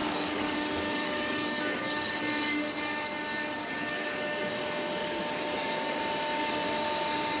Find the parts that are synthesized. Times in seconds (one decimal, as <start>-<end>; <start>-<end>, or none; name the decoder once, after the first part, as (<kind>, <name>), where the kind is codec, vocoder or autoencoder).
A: 0.0-2.1 (codec, DAC); 3.8-4.5; 5.0-6.0